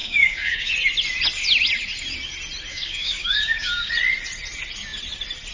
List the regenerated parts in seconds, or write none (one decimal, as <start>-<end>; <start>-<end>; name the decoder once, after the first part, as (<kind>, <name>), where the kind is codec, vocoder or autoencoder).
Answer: 0.0-0.7 (codec, DAC); 2.7-3.9